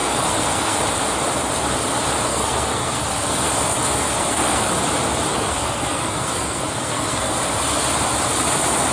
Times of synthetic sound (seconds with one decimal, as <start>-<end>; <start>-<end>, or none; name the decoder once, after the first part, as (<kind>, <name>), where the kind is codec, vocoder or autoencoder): 0.0-0.8 (codec, SNAC); 2.3-3.5; 4.0-4.7; 5.3-7.3